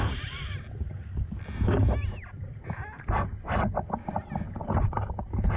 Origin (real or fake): real